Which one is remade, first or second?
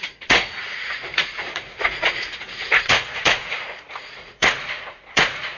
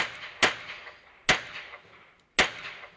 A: first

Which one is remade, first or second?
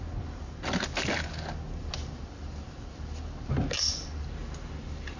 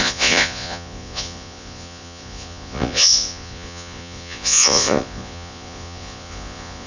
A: second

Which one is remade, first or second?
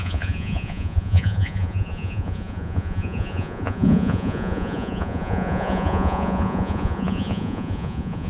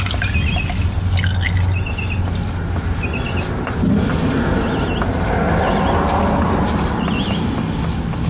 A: first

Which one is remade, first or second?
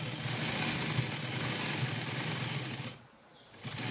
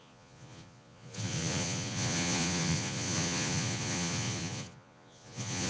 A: second